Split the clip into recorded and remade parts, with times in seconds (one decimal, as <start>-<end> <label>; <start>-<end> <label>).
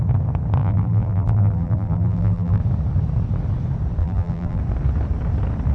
0.0-0.6 recorded; 0.6-2.6 remade; 2.6-4.0 recorded; 4.0-4.6 remade; 4.6-5.7 recorded